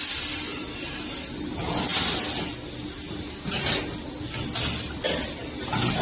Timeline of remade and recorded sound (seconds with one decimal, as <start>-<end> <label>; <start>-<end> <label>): 0.0-6.0 recorded